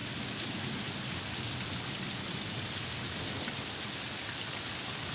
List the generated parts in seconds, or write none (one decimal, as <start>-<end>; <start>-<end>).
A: none